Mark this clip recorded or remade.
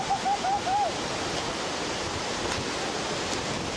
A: recorded